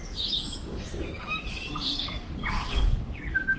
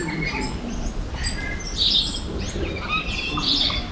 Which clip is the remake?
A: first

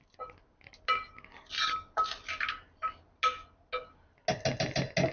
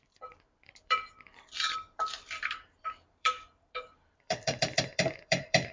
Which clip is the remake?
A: second